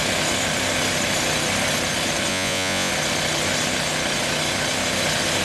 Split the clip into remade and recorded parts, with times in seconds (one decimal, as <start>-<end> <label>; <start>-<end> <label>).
0.0-2.3 recorded; 2.3-2.9 remade; 2.9-5.4 recorded